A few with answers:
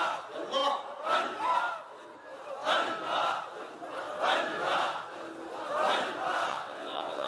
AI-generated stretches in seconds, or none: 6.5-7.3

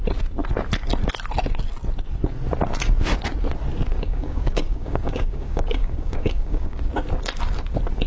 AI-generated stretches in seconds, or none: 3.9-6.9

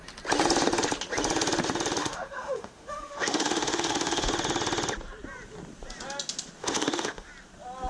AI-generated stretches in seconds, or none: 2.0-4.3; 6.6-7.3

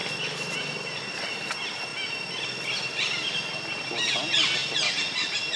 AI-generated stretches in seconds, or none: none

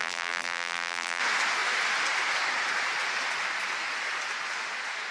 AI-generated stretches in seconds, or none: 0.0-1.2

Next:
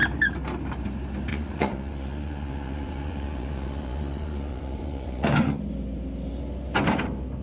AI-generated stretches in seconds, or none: 1.3-5.6

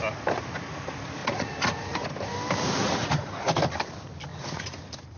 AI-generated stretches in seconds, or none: 1.2-2.1; 2.8-3.5; 4.3-4.8